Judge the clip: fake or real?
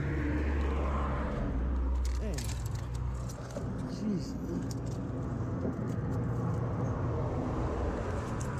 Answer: real